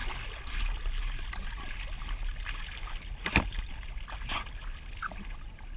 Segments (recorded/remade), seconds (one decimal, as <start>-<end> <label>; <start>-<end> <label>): 0.0-5.8 recorded